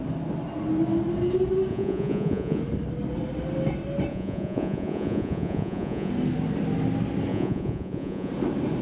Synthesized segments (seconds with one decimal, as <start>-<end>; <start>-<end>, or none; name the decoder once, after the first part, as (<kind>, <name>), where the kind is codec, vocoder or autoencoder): 1.7-2.6 (vocoder, Vocos); 4.1-6.1; 7.3-8.3